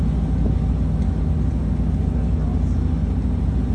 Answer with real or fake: real